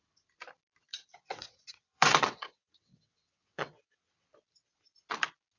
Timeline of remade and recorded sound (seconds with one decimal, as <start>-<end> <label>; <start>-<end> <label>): 0.0-0.9 recorded; 0.9-4.3 remade; 4.3-5.6 recorded

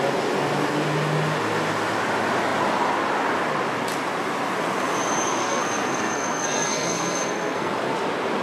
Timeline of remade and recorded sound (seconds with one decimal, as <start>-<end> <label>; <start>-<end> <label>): 0.0-5.4 recorded; 5.4-7.7 remade; 7.7-8.4 recorded

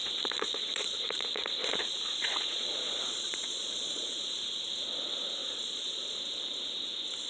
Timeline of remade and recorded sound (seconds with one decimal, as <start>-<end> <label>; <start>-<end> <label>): 0.0-4.4 remade; 4.4-5.4 recorded; 5.4-6.2 remade; 6.2-7.3 recorded

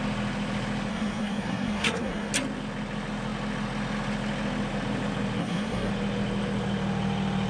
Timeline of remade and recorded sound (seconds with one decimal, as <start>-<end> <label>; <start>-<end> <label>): 0.0-0.9 recorded; 0.9-2.3 remade; 2.3-5.4 recorded; 5.4-5.9 remade; 5.9-7.5 recorded

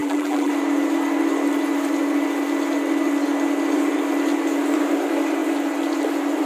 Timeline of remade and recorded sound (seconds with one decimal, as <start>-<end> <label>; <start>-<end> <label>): 0.0-0.5 remade; 0.5-6.5 recorded